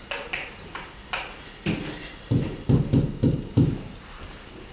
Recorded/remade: recorded